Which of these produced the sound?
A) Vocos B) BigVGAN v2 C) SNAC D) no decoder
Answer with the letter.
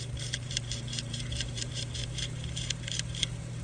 B